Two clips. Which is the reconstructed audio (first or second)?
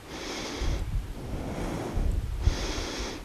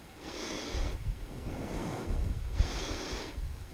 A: second